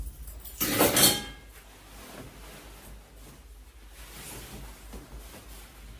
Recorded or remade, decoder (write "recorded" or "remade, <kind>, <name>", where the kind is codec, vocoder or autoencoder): recorded